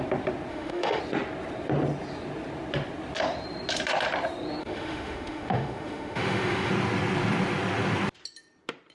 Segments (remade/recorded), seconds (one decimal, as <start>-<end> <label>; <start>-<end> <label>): 0.0-0.5 recorded; 0.5-1.0 remade; 1.0-4.6 recorded; 4.6-6.7 remade; 6.7-8.9 recorded